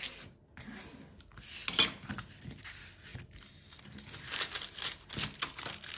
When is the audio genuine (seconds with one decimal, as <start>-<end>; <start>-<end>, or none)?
0.0-6.0